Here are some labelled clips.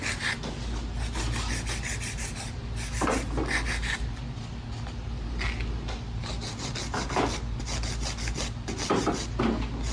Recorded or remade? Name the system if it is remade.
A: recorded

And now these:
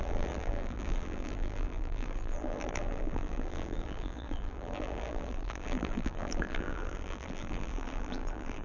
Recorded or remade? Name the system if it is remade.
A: remade, vocoder, BigVGAN v2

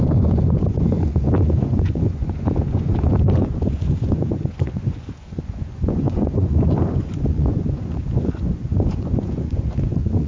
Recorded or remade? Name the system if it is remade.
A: remade, vocoder, Vocos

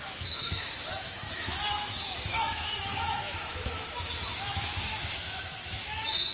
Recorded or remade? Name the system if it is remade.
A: remade, autoencoder, DAC-VAE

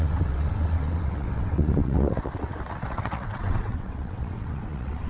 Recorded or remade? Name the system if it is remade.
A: remade, vocoder, WaveNeXt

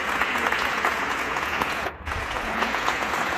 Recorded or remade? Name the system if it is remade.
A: remade, vocoder, Vocos